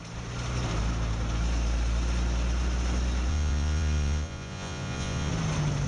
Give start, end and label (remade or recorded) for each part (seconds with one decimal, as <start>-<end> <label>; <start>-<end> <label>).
0.0-3.3 recorded; 3.3-5.3 remade; 5.3-5.9 recorded

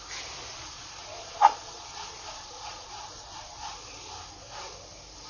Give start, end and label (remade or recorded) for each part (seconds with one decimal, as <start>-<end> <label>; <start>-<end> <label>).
0.0-0.5 recorded; 0.5-3.7 remade; 3.7-5.3 recorded

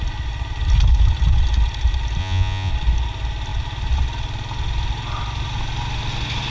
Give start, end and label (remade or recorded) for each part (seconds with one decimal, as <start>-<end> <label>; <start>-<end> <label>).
0.0-2.2 recorded; 2.2-2.7 remade; 2.7-6.5 recorded